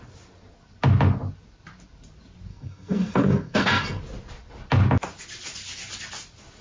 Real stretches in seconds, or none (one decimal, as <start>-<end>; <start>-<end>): 0.0-2.5; 4.0-6.6